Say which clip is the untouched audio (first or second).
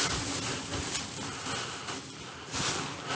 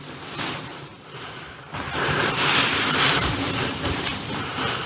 first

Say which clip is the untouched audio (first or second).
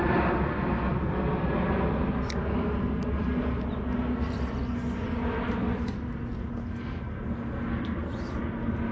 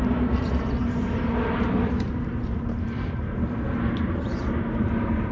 first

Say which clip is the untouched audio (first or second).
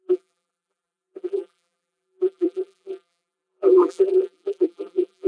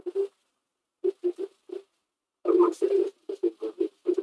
second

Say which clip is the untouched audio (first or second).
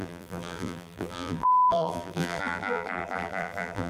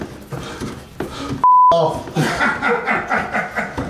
second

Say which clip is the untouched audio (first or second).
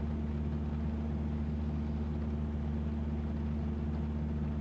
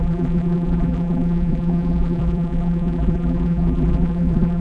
first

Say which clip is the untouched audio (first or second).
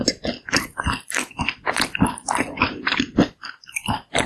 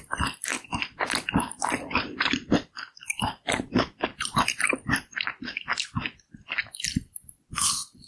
first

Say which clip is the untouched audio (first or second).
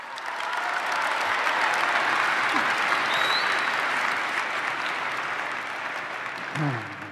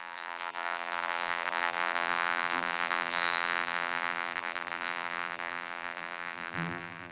first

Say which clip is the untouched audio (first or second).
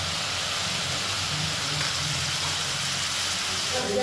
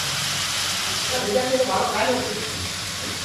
first